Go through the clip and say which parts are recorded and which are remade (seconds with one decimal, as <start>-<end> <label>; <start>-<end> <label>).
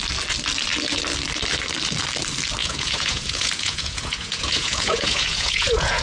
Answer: 0.0-2.6 recorded; 2.6-6.0 remade